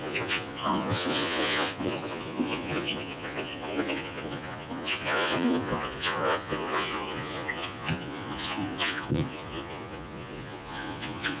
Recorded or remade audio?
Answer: remade